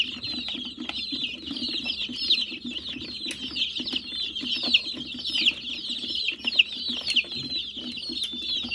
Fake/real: real